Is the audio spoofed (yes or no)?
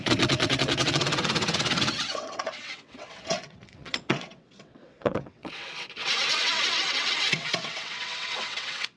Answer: yes